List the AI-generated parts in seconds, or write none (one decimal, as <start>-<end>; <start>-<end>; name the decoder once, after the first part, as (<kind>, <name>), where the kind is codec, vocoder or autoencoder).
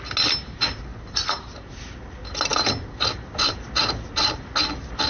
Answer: none